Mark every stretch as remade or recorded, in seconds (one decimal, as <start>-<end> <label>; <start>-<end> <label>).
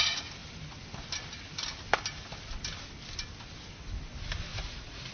0.0-4.5 recorded; 4.5-5.1 remade